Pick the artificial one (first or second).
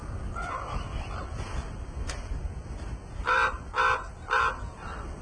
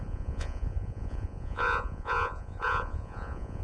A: second